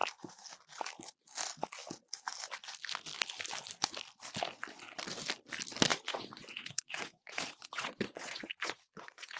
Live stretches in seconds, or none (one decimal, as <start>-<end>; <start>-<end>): 0.0-5.9